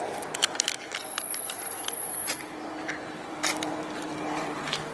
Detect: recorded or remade remade